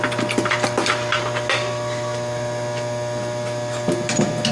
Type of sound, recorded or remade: recorded